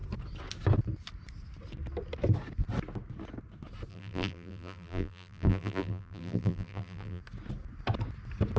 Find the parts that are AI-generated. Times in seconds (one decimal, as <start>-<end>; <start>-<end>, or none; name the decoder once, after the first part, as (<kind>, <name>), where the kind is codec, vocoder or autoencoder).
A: 3.9-7.2 (vocoder, BigVGAN v2)